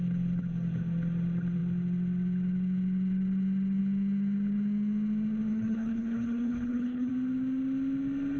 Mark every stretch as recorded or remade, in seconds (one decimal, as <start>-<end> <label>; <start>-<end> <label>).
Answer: 0.0-5.5 recorded; 5.5-7.1 remade; 7.1-8.4 recorded